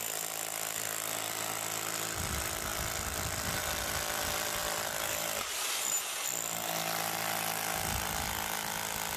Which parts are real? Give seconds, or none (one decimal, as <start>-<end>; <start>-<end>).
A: 0.0-2.7; 4.0-9.2